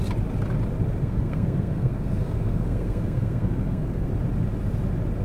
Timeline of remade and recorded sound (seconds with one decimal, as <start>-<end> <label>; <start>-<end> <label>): 0.0-1.0 recorded; 1.0-4.1 remade; 4.1-5.2 recorded